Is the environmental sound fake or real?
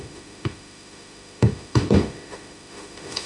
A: fake